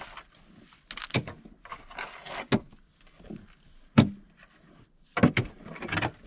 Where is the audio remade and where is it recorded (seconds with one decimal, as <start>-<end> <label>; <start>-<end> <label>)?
0.0-6.3 recorded